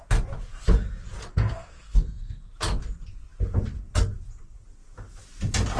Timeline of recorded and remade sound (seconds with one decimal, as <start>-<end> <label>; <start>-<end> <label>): 0.0-1.3 recorded; 1.3-2.5 remade; 2.5-5.8 recorded